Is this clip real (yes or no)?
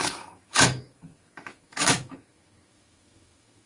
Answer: no